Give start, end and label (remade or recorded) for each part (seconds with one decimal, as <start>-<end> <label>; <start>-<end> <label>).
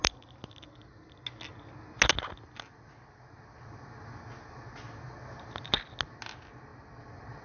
0.0-7.4 recorded